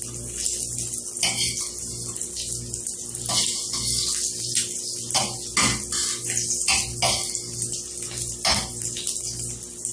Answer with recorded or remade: recorded